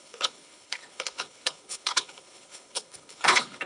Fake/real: fake